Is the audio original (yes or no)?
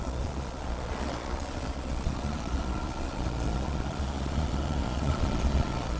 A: no